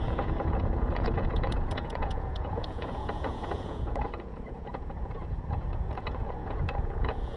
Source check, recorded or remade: remade